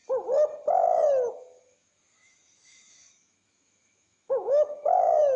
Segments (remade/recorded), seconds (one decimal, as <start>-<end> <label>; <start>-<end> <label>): 0.0-1.3 recorded; 1.3-5.4 remade

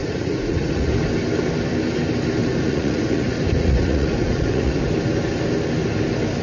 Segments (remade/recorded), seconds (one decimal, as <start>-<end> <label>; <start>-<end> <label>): 0.0-0.9 remade; 0.9-2.4 recorded; 2.4-4.8 remade; 4.8-6.4 recorded

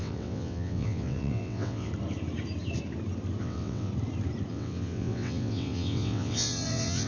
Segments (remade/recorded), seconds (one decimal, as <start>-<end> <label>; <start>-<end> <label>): 0.0-1.9 remade; 1.9-3.4 recorded; 3.4-3.9 remade; 3.9-4.5 recorded; 4.5-7.1 remade

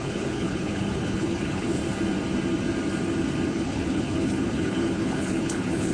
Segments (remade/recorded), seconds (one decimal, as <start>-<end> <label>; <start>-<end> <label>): 0.0-1.8 remade; 1.8-3.5 recorded; 3.5-5.9 remade

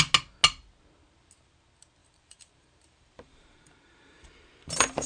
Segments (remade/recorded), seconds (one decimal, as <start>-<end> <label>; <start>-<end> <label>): 0.0-2.0 recorded; 2.0-5.1 remade